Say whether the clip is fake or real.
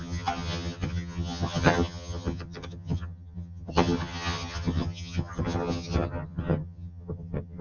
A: fake